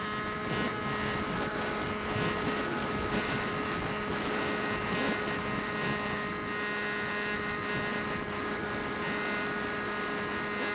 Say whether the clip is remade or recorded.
recorded